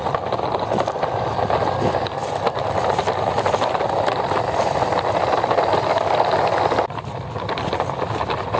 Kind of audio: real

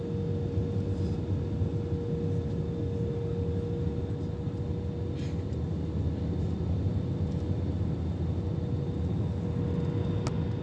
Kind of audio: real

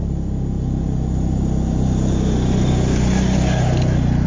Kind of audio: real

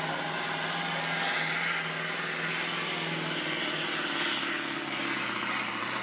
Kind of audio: real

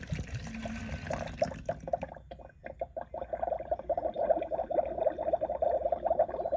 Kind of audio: real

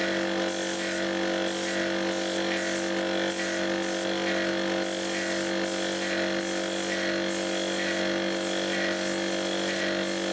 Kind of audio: real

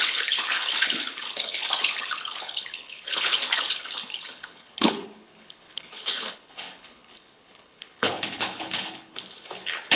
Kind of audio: fake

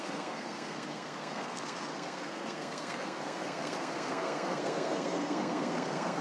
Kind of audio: fake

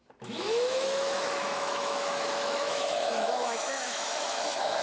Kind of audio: fake